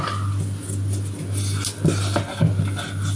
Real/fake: real